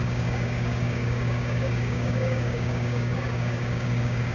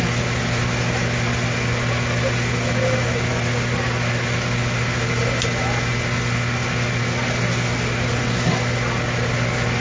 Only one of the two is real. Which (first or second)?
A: second